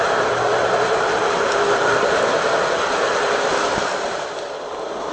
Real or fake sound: real